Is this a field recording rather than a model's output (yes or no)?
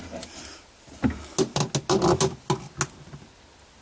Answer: yes